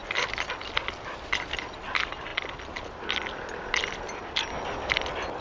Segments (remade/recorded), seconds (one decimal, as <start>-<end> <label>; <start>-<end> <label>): 0.0-5.4 recorded